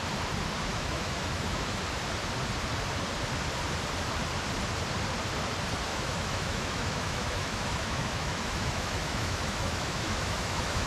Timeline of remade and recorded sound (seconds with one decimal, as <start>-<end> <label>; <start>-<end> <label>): 0.0-0.7 recorded; 0.7-1.8 remade; 1.8-5.9 recorded; 5.9-10.9 remade